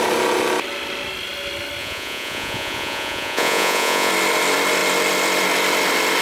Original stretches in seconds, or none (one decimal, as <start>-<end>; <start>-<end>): 0.0-1.8; 4.1-6.2